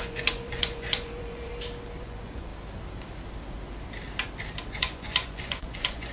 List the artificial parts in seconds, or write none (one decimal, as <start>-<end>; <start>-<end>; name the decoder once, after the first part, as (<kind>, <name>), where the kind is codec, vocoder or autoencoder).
0.0-1.5 (vocoder, Vocos); 2.0-2.5; 4.8-6.1